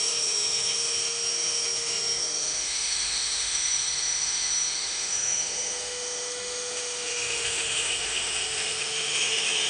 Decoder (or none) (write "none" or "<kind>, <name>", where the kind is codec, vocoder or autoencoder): autoencoder, DAC-VAE